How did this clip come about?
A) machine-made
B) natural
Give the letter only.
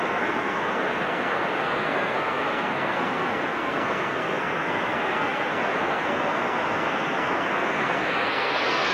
A